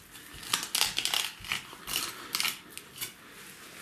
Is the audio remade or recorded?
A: recorded